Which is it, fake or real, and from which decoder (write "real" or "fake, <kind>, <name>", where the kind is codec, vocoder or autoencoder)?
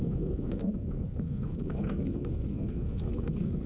fake, codec, SNAC